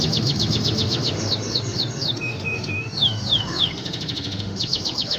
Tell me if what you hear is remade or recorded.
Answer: remade